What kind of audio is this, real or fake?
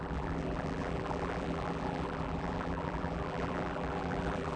fake